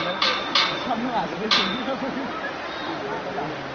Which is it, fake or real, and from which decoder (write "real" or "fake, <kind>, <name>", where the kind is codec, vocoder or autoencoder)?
real